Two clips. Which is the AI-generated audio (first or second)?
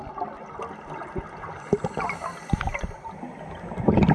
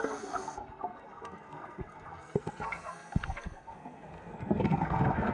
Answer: second